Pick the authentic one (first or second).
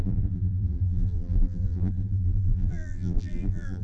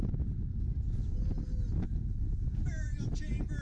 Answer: second